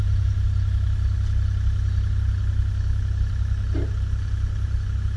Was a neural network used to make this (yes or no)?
no